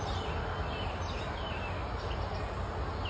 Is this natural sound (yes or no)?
yes